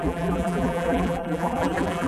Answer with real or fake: fake